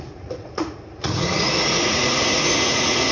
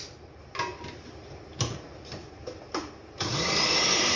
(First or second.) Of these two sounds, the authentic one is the second